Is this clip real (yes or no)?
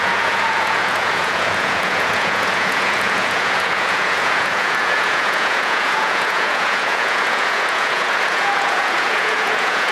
no